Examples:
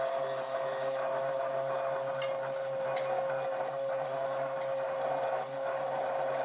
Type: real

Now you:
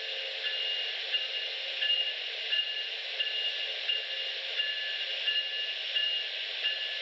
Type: real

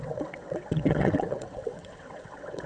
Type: fake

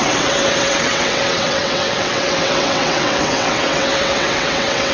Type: fake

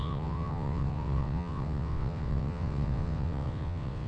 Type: fake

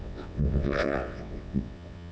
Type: fake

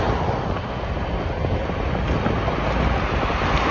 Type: real